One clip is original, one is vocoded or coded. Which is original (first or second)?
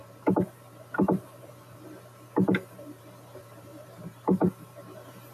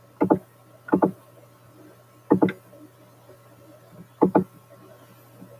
second